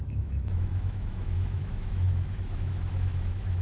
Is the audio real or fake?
fake